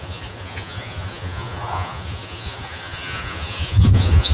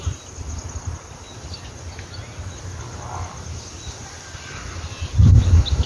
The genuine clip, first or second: second